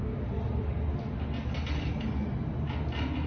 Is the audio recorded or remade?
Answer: recorded